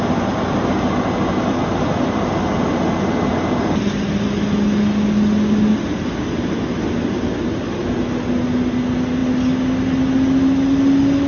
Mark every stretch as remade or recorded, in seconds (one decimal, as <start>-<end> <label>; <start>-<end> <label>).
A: 0.0-11.3 recorded